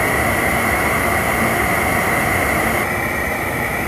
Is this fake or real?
real